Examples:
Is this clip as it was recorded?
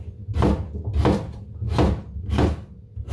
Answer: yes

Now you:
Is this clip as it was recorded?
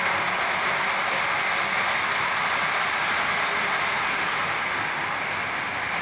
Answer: yes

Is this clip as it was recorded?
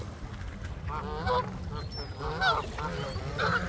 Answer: yes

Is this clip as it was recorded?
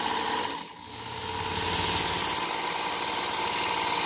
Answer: yes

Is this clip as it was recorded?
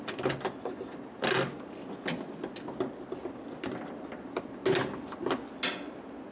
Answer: yes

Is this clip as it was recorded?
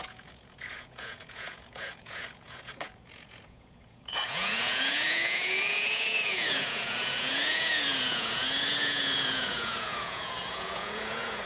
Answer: no